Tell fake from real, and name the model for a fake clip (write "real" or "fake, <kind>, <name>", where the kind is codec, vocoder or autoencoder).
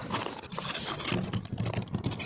real